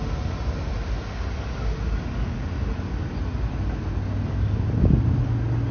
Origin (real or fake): real